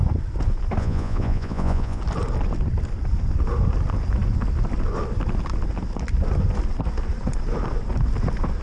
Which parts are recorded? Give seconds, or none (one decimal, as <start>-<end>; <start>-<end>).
0.0-0.8; 2.0-8.6